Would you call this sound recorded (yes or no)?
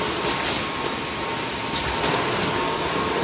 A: yes